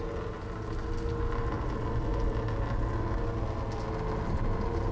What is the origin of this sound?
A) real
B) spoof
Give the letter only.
A